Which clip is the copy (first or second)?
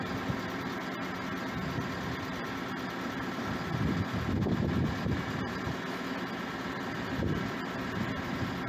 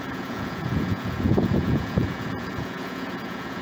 second